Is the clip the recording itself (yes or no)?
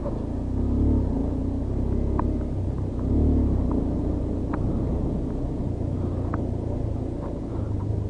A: yes